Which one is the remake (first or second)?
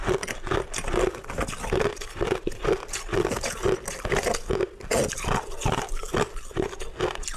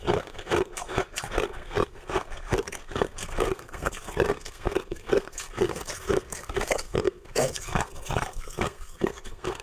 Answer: second